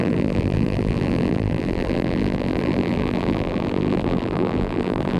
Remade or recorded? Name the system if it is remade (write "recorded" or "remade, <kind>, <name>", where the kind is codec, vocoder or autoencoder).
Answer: remade, vocoder, BigVGAN v2